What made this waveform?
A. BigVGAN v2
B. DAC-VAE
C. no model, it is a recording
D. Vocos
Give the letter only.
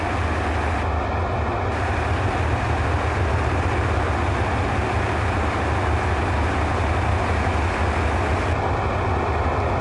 C